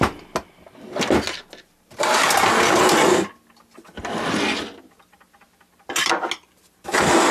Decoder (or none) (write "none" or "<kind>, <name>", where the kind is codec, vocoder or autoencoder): none